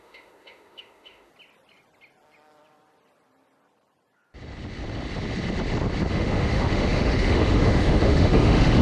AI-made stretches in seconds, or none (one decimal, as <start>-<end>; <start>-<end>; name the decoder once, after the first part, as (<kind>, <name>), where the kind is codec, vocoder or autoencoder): 0.0-1.3 (autoencoder, DAC-VAE); 6.1-8.8